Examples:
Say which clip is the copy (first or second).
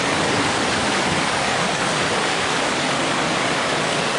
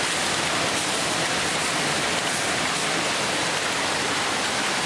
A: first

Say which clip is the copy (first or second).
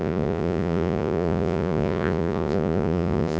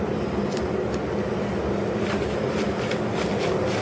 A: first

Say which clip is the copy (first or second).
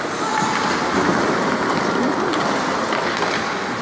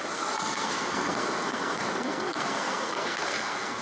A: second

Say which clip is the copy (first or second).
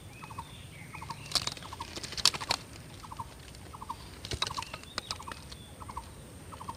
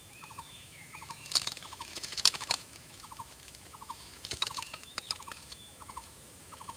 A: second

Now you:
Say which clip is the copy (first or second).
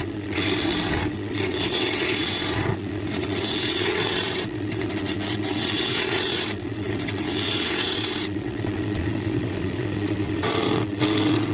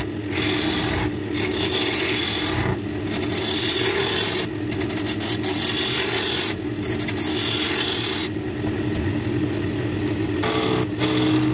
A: first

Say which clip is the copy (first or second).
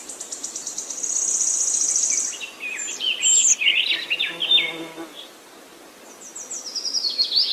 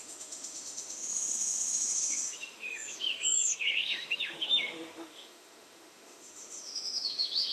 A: second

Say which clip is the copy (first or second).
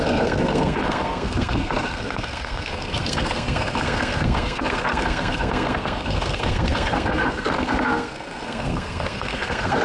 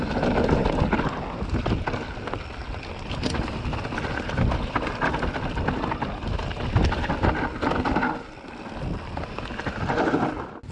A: first